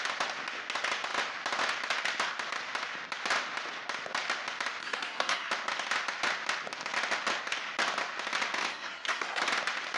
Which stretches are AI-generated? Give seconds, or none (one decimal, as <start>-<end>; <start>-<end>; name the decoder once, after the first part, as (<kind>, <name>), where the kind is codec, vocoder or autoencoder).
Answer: 4.8-5.5 (codec, SNAC); 8.7-9.4